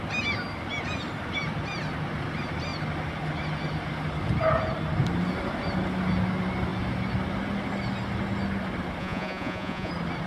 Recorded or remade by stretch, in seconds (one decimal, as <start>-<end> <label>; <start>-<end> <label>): 0.0-9.0 recorded; 9.0-9.9 remade; 9.9-10.3 recorded